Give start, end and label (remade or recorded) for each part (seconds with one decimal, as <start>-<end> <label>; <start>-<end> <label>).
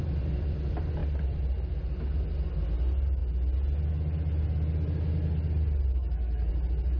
0.0-6.0 recorded; 6.0-6.5 remade; 6.5-7.0 recorded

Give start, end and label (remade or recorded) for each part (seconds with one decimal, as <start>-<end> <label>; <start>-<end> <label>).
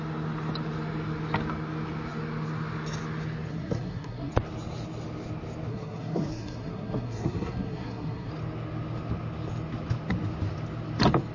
0.0-3.5 recorded; 3.5-4.3 remade; 4.3-5.7 recorded; 5.7-8.3 remade; 8.3-11.3 recorded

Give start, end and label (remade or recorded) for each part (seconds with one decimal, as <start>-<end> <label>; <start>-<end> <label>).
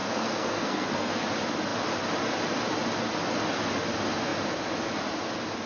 0.0-1.1 remade; 1.1-5.7 recorded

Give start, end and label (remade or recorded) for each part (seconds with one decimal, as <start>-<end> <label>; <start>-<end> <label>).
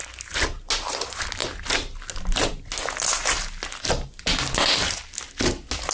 0.0-5.9 recorded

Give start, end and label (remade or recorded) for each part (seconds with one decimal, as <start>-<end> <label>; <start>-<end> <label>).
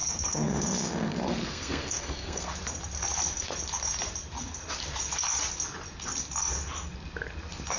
0.0-2.5 remade; 2.5-7.8 recorded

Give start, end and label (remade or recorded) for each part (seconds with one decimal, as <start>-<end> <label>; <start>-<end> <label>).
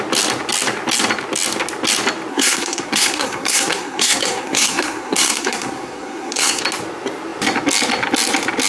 0.0-2.3 recorded; 2.3-6.6 remade; 6.6-8.7 recorded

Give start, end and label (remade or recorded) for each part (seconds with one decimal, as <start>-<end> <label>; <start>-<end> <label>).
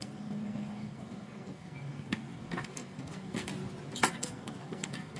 0.0-3.5 remade; 3.5-4.1 recorded; 4.1-5.2 remade